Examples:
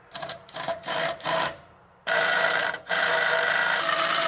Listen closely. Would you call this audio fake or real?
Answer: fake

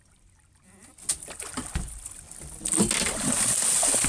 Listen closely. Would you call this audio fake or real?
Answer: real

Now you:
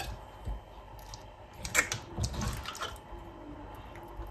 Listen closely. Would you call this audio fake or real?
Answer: real